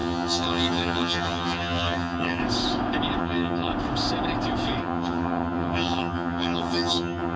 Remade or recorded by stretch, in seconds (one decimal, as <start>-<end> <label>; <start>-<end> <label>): 0.0-2.4 remade; 2.4-3.2 recorded; 3.2-3.7 remade; 3.7-4.8 recorded; 4.8-7.4 remade